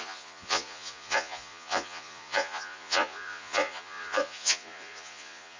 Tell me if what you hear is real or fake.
fake